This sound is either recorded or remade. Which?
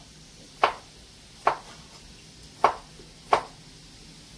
recorded